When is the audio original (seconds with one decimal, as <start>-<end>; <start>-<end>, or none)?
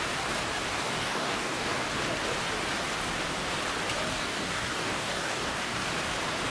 0.0-0.7; 1.9-4.1; 5.9-6.5